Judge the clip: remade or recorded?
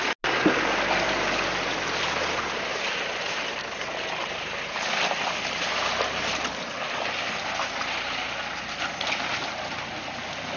recorded